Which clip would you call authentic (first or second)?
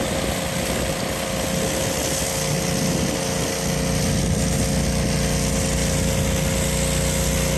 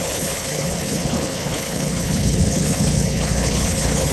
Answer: first